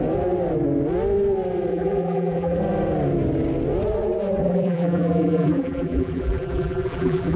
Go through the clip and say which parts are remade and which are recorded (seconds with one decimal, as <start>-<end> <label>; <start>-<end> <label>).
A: 0.0-1.7 recorded; 1.7-2.6 remade; 2.6-4.4 recorded; 4.4-7.4 remade